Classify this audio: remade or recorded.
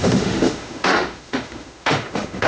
remade